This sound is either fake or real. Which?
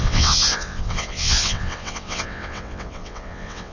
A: fake